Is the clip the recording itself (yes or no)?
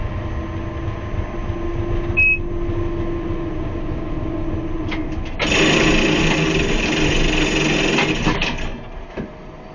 yes